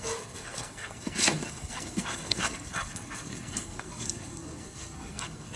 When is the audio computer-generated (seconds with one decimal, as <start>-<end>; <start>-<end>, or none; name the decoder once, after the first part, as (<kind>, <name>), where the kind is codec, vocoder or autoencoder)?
0.0-5.6 (codec, SNAC)